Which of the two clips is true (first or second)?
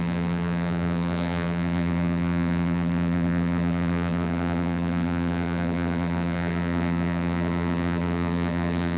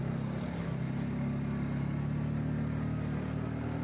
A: second